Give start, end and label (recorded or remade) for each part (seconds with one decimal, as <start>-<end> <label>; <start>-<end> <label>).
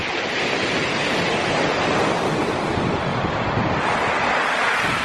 0.0-5.0 recorded